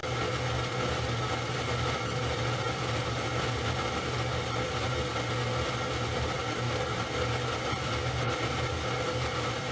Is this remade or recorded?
recorded